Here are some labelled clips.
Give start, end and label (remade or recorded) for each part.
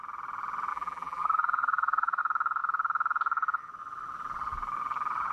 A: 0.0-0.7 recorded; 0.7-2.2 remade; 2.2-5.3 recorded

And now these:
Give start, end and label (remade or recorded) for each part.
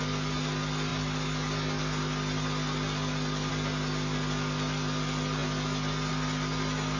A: 0.0-7.0 recorded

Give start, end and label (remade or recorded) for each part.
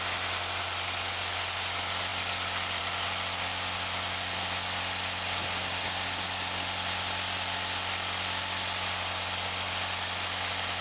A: 0.0-10.8 recorded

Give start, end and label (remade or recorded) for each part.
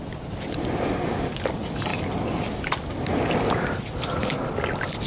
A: 0.0-5.1 recorded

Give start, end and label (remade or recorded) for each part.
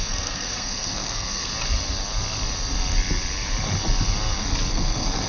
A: 0.0-1.5 remade; 1.5-4.7 recorded; 4.7-5.3 remade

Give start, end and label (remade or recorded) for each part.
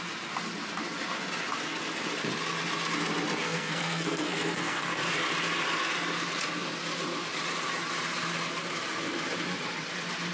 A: 0.0-3.4 recorded; 3.4-5.1 remade; 5.1-10.3 recorded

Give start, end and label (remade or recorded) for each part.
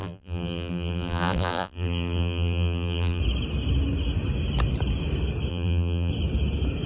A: 0.0-3.2 remade; 3.2-5.5 recorded; 5.5-6.1 remade; 6.1-6.9 recorded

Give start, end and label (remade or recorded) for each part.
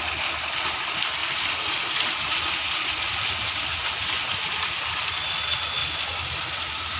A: 0.0-1.2 recorded; 1.2-5.1 remade; 5.1-5.8 recorded; 5.8-6.3 remade; 6.3-7.0 recorded